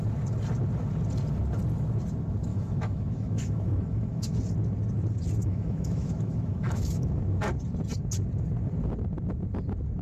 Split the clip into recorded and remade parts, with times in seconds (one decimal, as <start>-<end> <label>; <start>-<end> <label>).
0.0-2.5 recorded; 2.5-4.4 remade; 4.4-5.4 recorded; 5.4-7.2 remade; 7.2-10.0 recorded